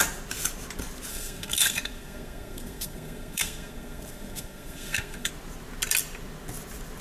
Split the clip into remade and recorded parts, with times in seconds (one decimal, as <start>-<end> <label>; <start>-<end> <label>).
0.0-1.1 recorded; 1.1-5.3 remade; 5.3-7.0 recorded